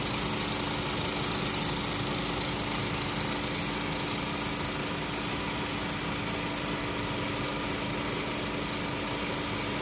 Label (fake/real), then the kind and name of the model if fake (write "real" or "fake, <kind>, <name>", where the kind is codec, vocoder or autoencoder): real